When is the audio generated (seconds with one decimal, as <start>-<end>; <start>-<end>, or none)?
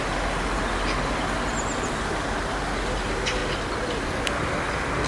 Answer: none